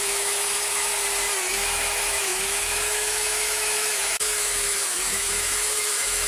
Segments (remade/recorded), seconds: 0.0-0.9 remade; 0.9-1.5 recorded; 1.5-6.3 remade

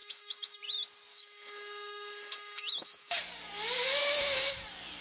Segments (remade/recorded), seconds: 0.0-0.6 remade; 0.6-1.1 recorded; 1.1-3.2 remade; 3.2-4.0 recorded; 4.0-4.6 remade; 4.6-5.0 recorded